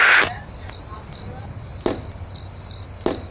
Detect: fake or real real